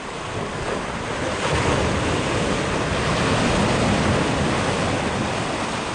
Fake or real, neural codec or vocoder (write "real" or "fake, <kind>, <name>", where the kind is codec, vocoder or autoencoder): real